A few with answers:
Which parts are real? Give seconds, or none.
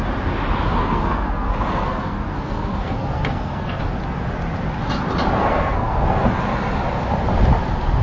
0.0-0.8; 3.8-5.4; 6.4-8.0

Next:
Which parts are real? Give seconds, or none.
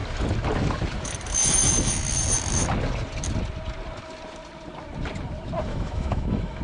0.0-5.7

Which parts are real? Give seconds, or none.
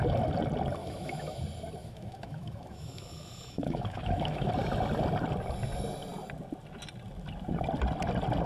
0.0-0.8; 1.4-1.8; 4.5-8.5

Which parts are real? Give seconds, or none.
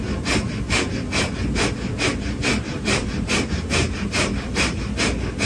0.0-2.5; 5.0-5.5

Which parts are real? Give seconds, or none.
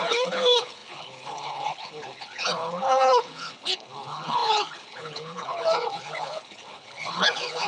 none